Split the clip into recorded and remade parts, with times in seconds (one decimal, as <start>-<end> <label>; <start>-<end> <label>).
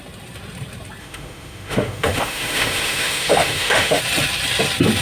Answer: 0.0-1.0 recorded; 1.0-4.0 remade; 4.0-5.0 recorded